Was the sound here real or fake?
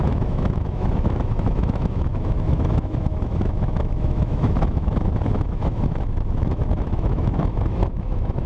fake